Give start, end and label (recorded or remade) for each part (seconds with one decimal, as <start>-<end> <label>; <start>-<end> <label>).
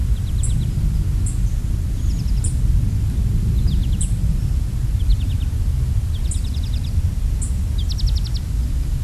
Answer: 0.0-9.0 recorded